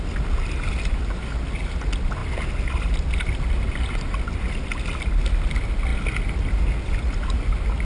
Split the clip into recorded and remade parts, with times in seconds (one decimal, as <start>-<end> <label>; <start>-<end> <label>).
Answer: 0.0-7.8 recorded